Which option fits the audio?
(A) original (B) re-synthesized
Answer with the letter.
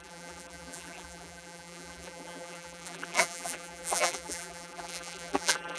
B